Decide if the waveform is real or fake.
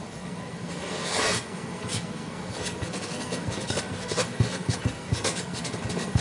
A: fake